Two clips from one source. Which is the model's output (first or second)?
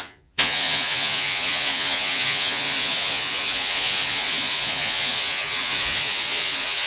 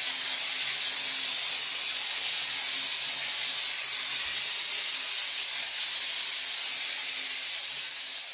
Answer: first